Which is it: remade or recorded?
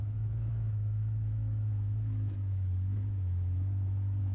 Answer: remade